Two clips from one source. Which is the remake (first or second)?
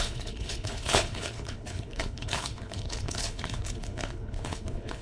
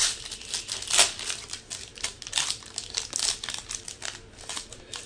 first